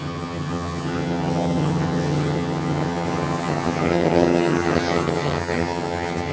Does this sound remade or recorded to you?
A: remade